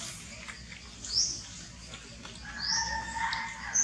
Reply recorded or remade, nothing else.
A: recorded